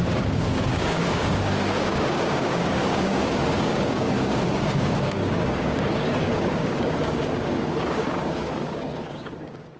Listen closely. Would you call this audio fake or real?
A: fake